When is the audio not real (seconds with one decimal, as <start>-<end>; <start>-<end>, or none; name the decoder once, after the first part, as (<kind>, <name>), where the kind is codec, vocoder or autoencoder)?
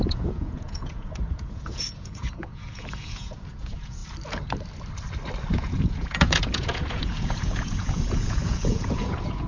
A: 0.0-4.0 (vocoder, Vocos); 5.5-9.5